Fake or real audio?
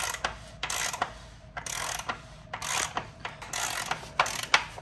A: real